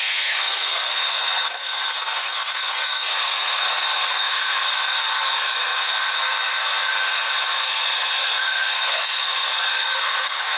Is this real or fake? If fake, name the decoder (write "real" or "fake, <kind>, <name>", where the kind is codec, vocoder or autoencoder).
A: fake, codec, SNAC